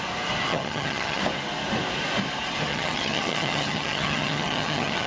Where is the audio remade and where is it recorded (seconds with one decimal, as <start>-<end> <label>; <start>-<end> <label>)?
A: 0.0-0.5 recorded; 0.5-1.2 remade; 1.2-2.7 recorded; 2.7-5.1 remade